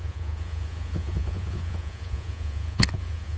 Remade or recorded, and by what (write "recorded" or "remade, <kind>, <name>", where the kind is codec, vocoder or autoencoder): remade, vocoder, Vocos